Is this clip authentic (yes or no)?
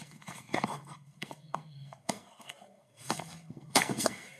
no